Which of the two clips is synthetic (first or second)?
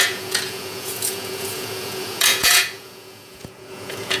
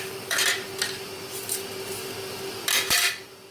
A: first